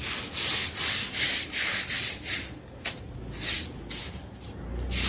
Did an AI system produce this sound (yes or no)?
no